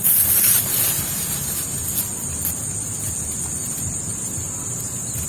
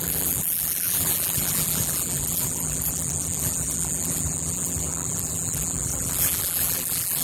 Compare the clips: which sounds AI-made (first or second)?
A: second